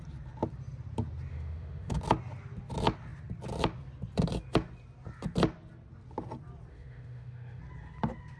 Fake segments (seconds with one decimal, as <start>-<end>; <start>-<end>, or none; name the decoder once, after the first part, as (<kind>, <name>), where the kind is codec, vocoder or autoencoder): 1.3-2.0 (autoencoder, DAC-VAE); 6.7-7.6